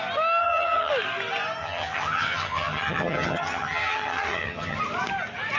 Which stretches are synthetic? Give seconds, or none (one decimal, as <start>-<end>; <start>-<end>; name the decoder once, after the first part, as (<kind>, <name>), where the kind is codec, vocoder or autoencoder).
0.4-0.9 (vocoder, HiFi-GAN); 1.6-4.8